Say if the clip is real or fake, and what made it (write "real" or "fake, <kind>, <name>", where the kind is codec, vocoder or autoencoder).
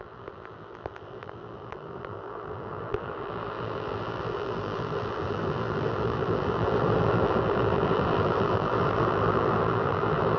fake, vocoder, BigVGAN v2